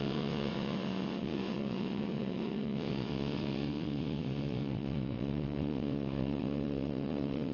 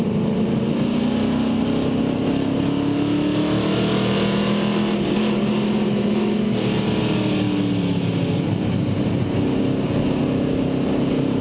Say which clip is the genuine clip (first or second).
second